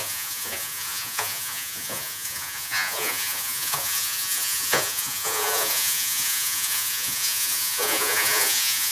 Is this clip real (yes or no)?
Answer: no